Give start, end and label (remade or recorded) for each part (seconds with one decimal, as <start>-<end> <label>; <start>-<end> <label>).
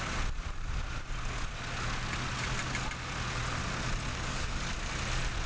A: 0.0-4.1 recorded; 4.1-4.6 remade; 4.6-5.5 recorded